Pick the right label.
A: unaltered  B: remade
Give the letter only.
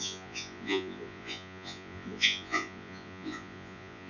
B